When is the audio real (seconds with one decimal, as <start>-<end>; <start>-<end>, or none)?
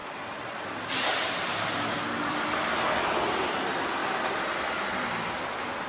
0.0-4.0; 4.8-5.9